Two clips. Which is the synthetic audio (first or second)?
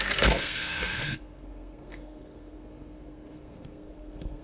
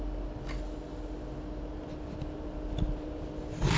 first